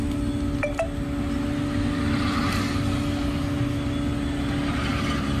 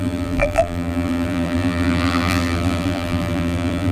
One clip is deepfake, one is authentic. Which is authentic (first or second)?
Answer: first